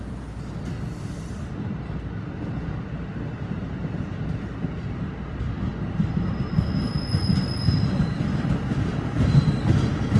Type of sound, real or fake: real